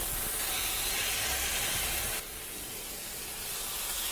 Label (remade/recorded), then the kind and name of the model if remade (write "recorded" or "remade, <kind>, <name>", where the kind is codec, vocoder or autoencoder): recorded